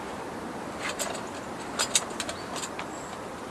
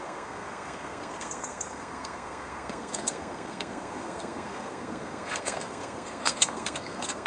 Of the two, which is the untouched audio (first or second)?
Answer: first